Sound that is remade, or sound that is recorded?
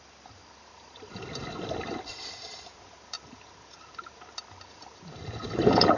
remade